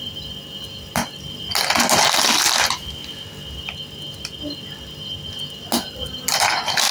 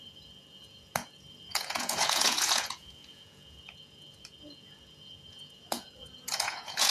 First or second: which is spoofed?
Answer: second